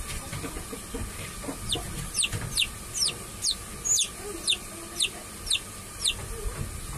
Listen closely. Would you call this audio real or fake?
real